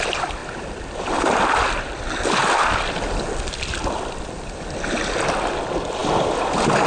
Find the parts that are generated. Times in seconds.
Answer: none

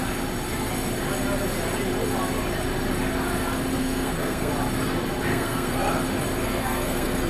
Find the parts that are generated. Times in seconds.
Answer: 3.8-4.5 (codec, SNAC); 5.3-5.9; 6.4-7.3

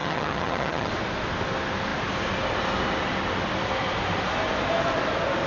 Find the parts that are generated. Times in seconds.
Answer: 0.0-0.9 (vocoder, HiFi-GAN)

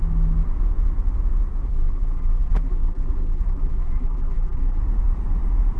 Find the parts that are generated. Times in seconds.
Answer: 1.7-4.8 (vocoder, BigVGAN v2)

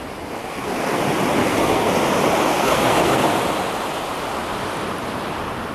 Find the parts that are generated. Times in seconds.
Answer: 0.4-1.0 (codec, SNAC); 1.4-1.9; 2.5-3.4